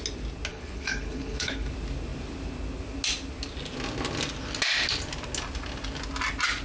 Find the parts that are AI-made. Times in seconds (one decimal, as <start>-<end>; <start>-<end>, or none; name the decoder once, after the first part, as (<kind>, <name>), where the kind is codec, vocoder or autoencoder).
0.5-1.7 (codec, HILCodec)

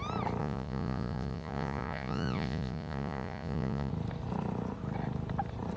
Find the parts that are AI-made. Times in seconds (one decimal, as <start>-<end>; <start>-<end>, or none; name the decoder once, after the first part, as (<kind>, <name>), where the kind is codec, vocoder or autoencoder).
0.4-3.9 (vocoder, Vocos)